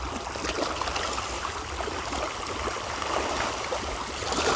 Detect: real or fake real